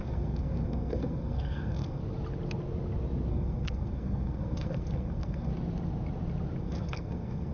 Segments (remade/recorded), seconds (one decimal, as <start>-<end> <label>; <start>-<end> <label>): 0.0-2.0 remade; 2.0-3.3 recorded; 3.3-5.5 remade; 5.5-6.6 recorded; 6.6-7.5 remade